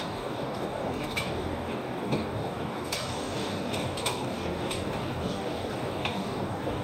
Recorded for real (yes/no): no